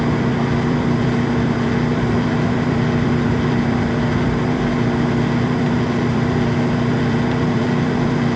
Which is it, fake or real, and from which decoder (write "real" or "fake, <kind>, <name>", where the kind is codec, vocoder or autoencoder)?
fake, vocoder, BigVGAN v2